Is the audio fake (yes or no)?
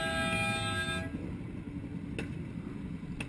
no